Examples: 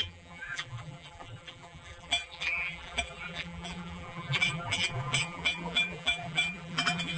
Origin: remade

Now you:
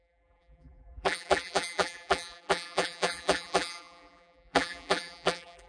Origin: remade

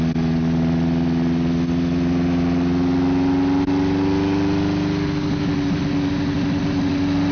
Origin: recorded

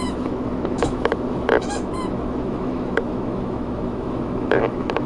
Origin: remade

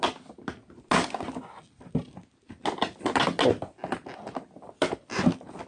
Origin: recorded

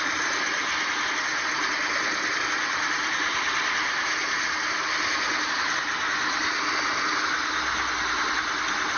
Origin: recorded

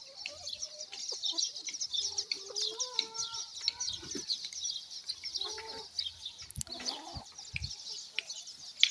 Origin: recorded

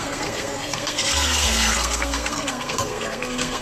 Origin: remade